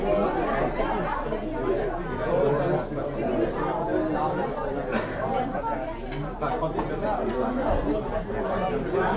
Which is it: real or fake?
real